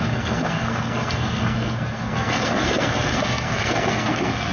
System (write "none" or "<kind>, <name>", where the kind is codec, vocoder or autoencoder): codec, SNAC